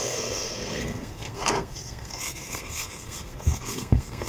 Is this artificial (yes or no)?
yes